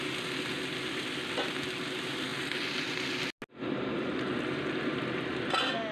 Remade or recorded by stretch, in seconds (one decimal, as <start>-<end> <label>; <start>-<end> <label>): 0.0-5.9 recorded